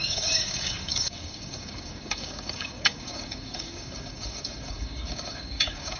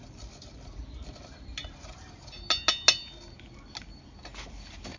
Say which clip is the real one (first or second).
second